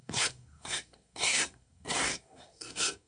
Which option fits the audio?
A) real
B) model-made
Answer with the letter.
B